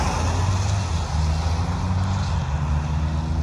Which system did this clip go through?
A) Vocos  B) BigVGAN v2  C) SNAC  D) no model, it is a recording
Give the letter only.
D